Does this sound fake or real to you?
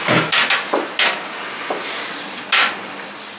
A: real